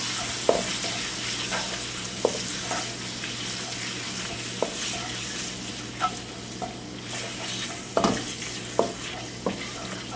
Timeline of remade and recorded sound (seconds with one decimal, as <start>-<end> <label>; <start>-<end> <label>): 0.0-10.2 recorded